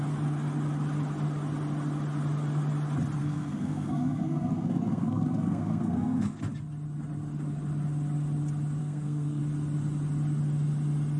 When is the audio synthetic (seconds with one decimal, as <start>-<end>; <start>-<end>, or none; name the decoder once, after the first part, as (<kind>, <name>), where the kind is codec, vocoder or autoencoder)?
3.2-6.4 (codec, SNAC); 8.8-9.4